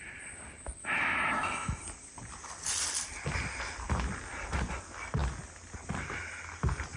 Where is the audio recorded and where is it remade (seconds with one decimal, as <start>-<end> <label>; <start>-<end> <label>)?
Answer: 0.0-0.8 recorded; 0.8-1.8 remade; 1.8-7.0 recorded